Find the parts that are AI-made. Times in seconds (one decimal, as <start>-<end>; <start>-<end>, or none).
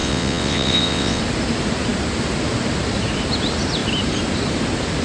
0.0-1.2